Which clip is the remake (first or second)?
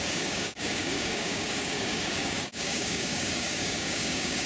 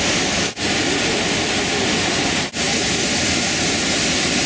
first